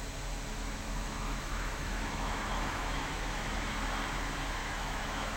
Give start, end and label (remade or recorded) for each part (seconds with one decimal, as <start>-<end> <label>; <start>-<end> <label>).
0.0-0.5 recorded; 0.5-3.7 remade; 3.7-4.6 recorded; 4.6-5.4 remade